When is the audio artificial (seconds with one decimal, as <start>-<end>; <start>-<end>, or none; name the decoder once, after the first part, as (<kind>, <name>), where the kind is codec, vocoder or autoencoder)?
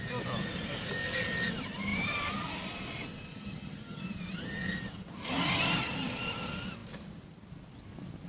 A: 3.3-4.0 (vocoder, HiFi-GAN)